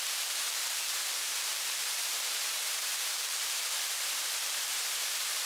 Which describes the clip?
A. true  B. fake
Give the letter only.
B